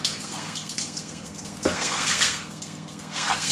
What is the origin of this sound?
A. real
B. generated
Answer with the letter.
B